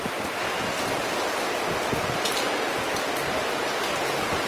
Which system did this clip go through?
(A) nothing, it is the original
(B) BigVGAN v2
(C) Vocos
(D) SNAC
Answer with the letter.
A